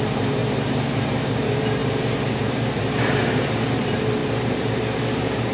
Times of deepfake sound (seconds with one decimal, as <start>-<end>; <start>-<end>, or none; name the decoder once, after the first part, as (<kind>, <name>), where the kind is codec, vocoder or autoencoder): 0.0-5.5 (vocoder, BigVGAN v2)